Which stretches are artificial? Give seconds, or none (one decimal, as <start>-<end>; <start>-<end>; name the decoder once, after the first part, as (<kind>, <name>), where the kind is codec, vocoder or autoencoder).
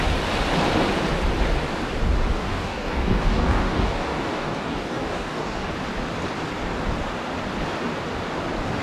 2.5-5.7 (codec, DAC)